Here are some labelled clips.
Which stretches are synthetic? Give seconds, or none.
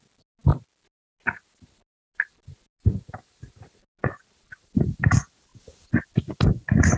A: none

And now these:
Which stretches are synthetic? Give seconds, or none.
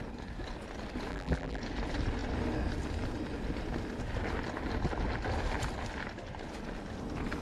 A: 1.1-1.6 (vocoder, BigVGAN v2)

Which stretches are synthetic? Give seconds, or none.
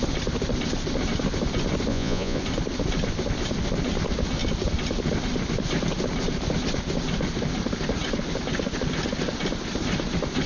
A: 1.9-2.4 (vocoder, Vocos)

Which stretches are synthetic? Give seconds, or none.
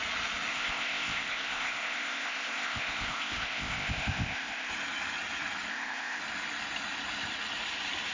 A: 0.5-4.7 (codec, ZipCodec); 5.7-6.2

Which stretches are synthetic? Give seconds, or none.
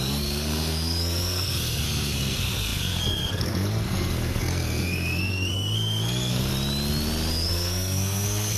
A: 0.0-6.5 (codec, SNAC); 7.3-8.6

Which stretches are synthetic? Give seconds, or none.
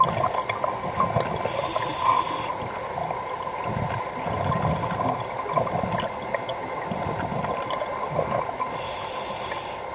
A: none